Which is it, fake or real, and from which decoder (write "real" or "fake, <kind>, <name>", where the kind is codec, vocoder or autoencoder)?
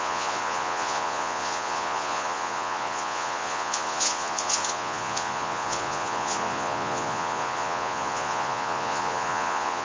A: fake, vocoder, Vocos